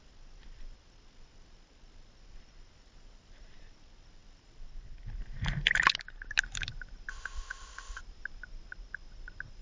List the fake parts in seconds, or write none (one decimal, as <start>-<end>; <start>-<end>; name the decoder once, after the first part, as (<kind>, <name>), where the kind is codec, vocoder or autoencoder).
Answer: 7.1-8.0 (codec, ZipCodec)

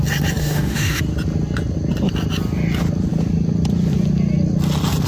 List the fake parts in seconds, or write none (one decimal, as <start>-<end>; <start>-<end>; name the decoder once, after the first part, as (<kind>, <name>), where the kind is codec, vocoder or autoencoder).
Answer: 0.4-1.0 (autoencoder, DAC-VAE)

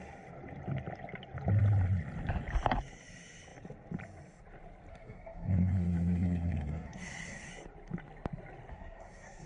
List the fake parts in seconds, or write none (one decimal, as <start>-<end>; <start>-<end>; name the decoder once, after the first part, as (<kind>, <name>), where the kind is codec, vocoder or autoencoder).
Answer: 4.9-7.5 (codec, SNAC); 8.7-9.5

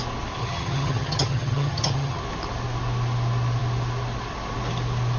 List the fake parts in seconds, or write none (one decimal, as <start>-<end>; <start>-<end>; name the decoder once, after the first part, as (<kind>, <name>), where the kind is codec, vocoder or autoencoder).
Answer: 0.4-2.2 (vocoder, HiFi-GAN)

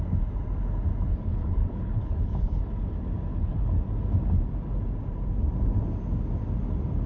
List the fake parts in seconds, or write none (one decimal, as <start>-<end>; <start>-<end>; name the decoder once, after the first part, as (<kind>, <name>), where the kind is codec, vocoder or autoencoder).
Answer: 1.1-2.6 (codec, HILCodec); 3.3-3.8